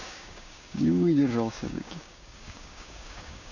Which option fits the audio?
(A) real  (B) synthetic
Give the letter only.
B